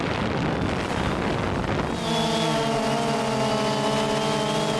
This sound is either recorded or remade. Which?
recorded